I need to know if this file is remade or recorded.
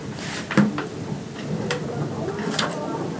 remade